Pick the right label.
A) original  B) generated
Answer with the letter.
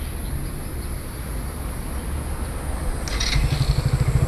A